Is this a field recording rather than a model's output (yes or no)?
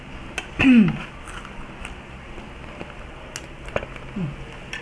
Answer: yes